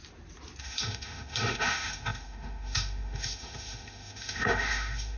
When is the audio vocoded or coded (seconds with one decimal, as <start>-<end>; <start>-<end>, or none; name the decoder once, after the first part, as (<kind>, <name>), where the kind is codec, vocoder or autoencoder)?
0.6-5.2 (autoencoder, DAC-VAE)